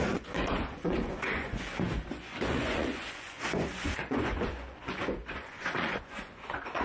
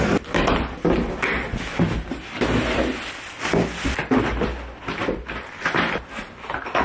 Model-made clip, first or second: first